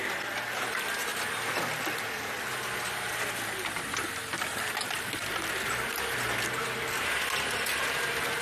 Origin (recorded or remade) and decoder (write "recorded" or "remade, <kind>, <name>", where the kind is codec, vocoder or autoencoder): recorded